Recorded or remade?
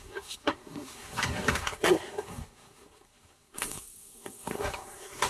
remade